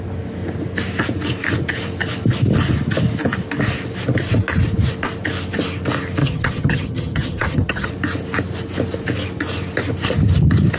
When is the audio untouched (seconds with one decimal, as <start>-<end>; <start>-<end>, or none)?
0.0-6.2; 7.9-10.8